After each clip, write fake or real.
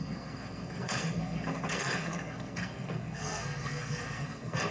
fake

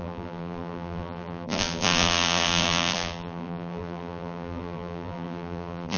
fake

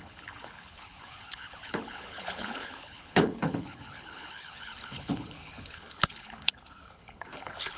fake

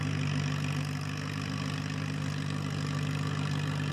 real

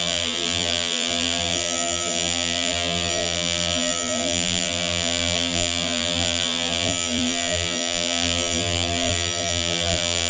fake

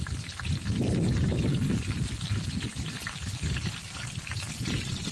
real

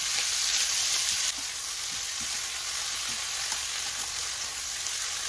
real